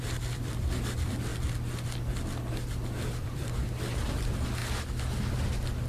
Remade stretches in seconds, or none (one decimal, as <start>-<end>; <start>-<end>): 0.0-1.3; 2.1-5.9